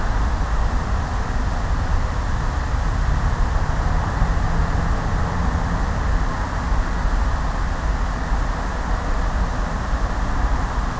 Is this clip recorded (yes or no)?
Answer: yes